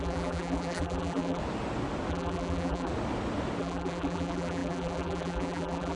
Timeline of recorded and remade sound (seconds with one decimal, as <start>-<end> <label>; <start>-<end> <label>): 0.0-1.4 remade; 1.4-2.1 recorded; 2.1-2.9 remade; 2.9-3.6 recorded; 3.6-6.0 remade